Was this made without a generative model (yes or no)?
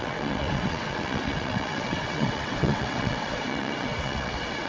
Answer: no